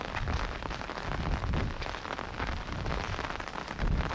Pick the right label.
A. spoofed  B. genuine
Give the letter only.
B